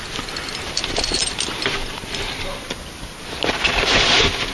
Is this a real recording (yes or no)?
yes